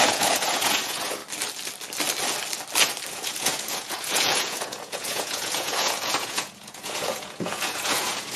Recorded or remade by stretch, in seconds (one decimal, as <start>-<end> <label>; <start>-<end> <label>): 0.0-1.2 remade; 1.2-3.1 recorded; 3.1-8.4 remade